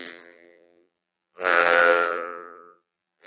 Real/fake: fake